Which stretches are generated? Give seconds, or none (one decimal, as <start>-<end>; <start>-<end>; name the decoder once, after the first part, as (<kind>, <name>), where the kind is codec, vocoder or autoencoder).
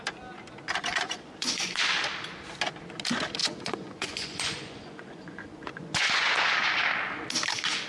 0.9-1.8 (vocoder, Vocos); 3.4-6.5